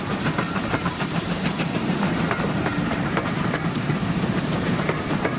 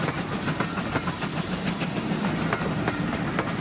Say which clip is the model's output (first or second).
first